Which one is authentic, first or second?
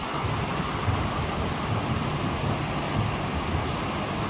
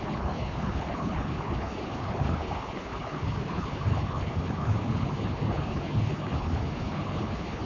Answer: first